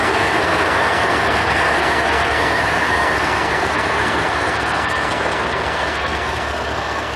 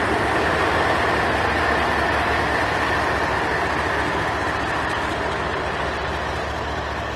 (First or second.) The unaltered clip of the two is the second